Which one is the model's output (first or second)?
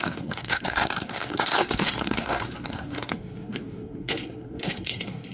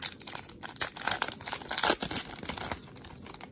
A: first